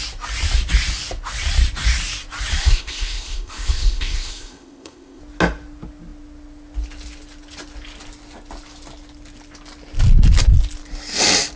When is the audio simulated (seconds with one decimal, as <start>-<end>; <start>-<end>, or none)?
2.6-5.2